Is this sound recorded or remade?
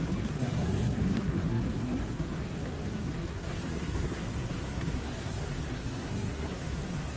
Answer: remade